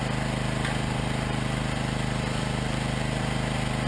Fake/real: real